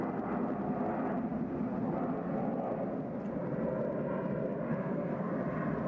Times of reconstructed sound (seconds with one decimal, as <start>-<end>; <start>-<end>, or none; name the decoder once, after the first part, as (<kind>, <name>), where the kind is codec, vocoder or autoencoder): 4.7-5.3 (codec, SNAC)